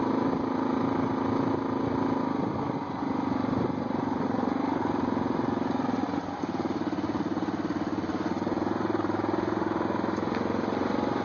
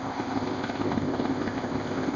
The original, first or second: first